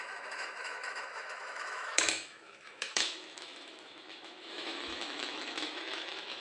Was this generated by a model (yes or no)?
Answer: yes